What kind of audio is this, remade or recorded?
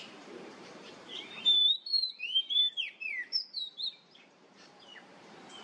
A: remade